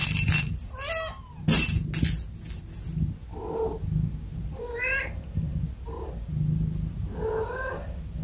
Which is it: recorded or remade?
recorded